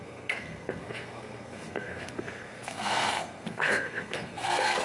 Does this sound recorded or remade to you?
remade